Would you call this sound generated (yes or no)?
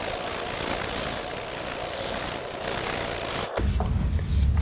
no